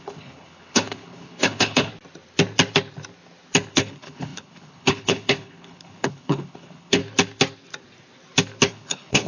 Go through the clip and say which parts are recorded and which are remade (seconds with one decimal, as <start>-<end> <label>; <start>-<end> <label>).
0.0-1.9 remade; 1.9-3.7 recorded; 3.7-7.0 remade; 7.0-8.7 recorded; 8.7-9.3 remade